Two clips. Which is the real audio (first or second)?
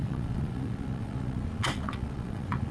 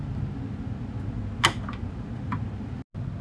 second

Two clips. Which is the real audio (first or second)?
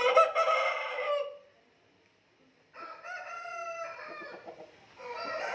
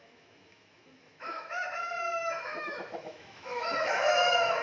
first